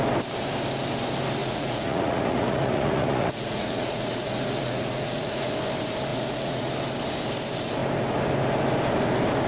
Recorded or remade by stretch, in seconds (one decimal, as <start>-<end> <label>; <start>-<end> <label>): 0.0-1.4 recorded; 1.4-5.5 remade; 5.5-6.1 recorded; 6.1-6.7 remade; 6.7-9.5 recorded